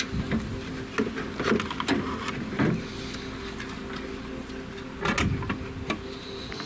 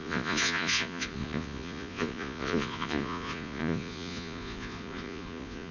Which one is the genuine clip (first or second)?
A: first